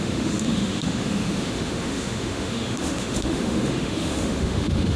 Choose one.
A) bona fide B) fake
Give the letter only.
B